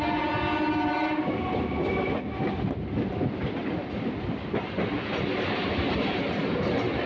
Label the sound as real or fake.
real